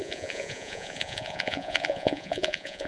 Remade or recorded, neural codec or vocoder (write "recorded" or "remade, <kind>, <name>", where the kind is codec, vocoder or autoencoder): remade, vocoder, Vocos